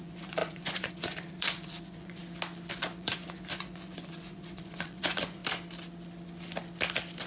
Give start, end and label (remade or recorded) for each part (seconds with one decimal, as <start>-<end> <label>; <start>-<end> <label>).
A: 0.0-2.2 remade; 2.2-2.7 recorded; 2.7-5.4 remade; 5.4-7.3 recorded